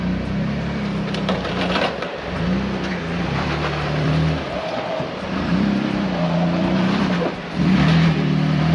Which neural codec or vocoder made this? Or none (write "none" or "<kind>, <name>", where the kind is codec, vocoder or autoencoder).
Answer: vocoder, BigVGAN v2